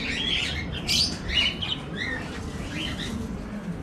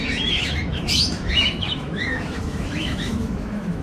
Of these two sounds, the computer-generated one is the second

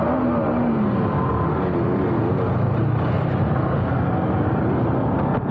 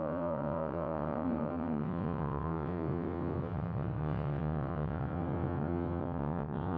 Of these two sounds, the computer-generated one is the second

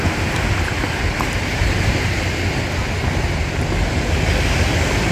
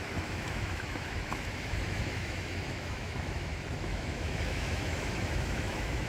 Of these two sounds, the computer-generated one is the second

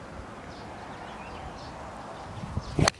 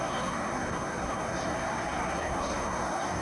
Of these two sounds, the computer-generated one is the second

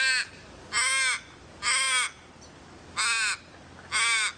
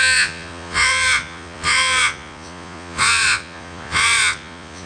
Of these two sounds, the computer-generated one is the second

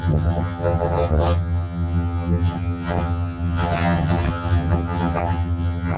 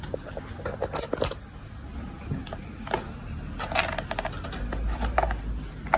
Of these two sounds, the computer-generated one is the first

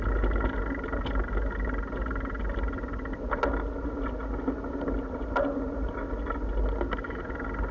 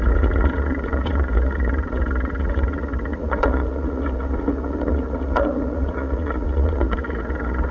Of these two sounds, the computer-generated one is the second